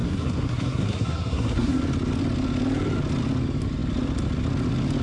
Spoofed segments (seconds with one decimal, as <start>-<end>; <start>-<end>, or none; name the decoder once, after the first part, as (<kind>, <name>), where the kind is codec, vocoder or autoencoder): 0.0-1.8 (codec, SNAC)